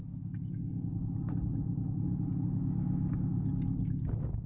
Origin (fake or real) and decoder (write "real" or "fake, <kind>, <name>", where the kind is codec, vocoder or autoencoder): real